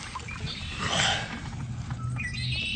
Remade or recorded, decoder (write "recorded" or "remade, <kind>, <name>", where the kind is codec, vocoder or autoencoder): recorded